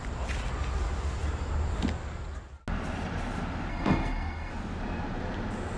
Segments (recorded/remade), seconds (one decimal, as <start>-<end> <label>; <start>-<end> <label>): 0.0-3.7 recorded; 3.7-4.5 remade; 4.5-5.8 recorded